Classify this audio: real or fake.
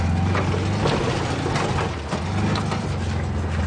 real